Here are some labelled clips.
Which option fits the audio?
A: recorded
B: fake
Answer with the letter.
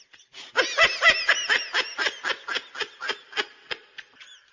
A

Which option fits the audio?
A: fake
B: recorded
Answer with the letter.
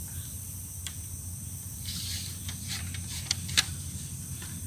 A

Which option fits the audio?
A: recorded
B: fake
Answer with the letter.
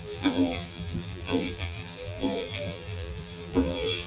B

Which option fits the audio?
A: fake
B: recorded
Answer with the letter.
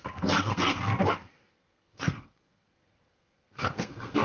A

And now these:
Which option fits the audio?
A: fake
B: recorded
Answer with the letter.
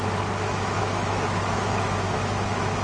A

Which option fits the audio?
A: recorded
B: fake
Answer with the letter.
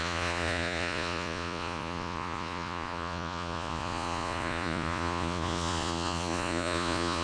B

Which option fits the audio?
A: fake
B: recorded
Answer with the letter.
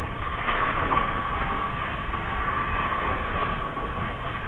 A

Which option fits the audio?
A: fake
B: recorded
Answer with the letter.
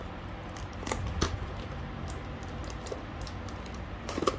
B